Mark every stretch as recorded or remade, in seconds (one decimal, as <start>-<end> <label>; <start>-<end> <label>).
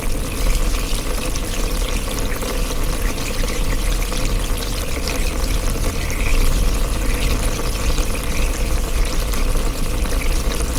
0.0-10.8 recorded